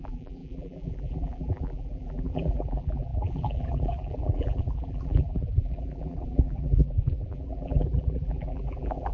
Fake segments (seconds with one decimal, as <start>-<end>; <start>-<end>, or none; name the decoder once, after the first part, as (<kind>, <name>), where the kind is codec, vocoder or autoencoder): 0.0-9.1 (vocoder, BigVGAN v2)